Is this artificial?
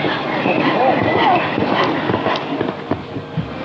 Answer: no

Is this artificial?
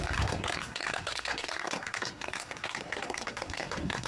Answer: yes